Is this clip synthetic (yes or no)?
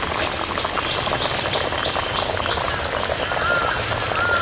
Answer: no